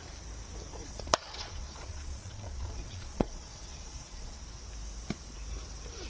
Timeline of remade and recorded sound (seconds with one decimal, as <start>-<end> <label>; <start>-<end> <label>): 0.0-0.7 recorded; 0.7-4.4 remade; 4.4-6.1 recorded